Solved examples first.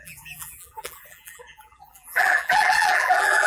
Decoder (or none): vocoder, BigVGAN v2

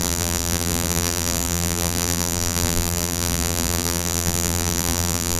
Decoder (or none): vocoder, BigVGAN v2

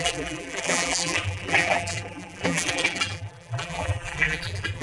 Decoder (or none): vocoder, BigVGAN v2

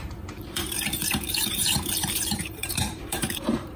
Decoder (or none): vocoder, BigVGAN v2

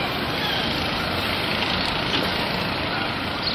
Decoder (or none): none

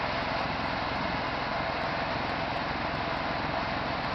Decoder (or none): none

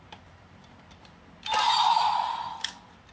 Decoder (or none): vocoder, BigVGAN v2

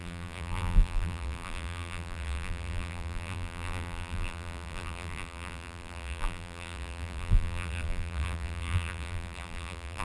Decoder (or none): vocoder, BigVGAN v2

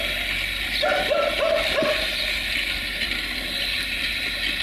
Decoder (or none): none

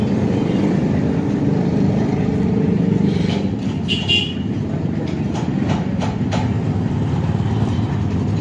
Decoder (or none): vocoder, BigVGAN v2